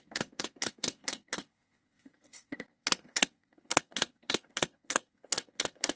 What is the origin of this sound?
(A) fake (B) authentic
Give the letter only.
A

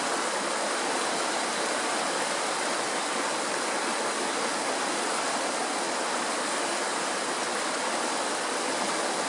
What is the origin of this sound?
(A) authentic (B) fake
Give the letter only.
A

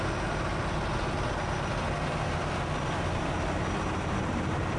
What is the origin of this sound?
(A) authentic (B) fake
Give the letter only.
A